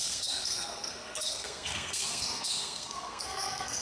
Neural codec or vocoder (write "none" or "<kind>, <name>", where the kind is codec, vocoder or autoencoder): codec, SNAC